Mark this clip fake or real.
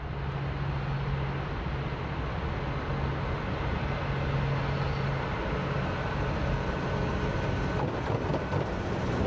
real